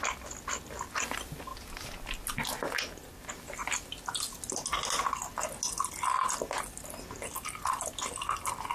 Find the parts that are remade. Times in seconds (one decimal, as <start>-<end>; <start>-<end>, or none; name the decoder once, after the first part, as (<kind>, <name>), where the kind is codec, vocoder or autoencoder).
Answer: none